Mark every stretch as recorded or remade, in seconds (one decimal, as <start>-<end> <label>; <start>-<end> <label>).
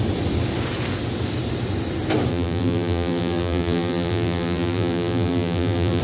0.0-2.3 recorded; 2.3-6.0 remade